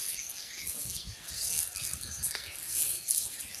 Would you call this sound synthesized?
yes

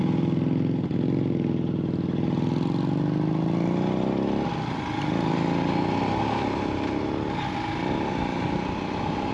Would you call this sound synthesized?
no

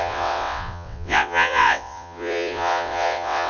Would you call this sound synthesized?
yes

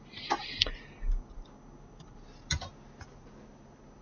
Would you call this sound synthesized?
no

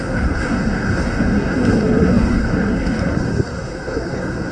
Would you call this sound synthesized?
yes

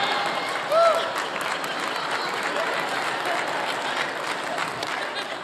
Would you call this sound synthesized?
no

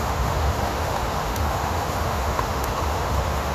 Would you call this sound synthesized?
yes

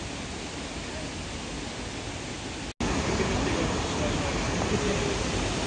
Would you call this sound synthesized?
no